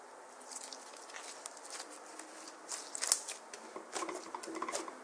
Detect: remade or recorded recorded